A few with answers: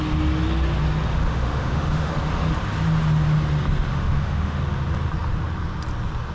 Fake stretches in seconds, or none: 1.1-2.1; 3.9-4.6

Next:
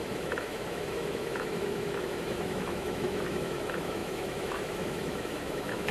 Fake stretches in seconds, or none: 0.0-5.9